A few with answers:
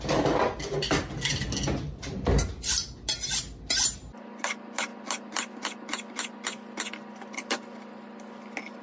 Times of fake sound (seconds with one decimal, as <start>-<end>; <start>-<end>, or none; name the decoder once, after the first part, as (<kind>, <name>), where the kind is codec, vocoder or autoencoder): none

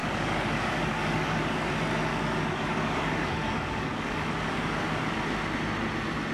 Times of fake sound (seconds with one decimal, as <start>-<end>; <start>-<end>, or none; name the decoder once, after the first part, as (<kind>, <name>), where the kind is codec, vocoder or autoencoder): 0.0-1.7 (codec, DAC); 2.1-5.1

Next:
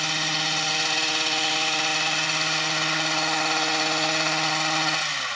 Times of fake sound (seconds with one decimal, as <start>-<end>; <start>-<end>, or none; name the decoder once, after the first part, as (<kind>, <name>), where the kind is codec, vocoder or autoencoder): none

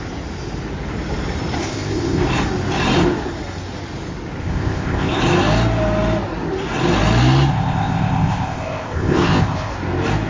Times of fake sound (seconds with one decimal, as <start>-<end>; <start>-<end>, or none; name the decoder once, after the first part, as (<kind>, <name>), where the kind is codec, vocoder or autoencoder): 1.6-2.2 (codec, ZipCodec); 4.4-5.2; 7.5-9.7

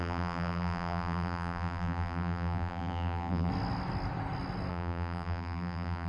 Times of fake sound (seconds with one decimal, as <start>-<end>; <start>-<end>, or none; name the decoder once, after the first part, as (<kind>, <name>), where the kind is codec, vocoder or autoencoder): 0.0-3.5 (vocoder, BigVGAN v2); 4.7-6.1

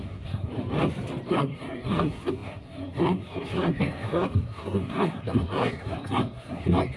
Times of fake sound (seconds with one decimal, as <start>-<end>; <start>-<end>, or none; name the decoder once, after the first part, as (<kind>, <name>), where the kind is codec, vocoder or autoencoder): 0.0-0.5 (codec, SNAC); 1.3-7.0